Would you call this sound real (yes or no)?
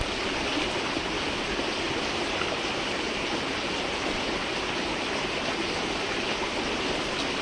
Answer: yes